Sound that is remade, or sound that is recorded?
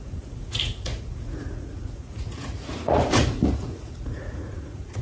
remade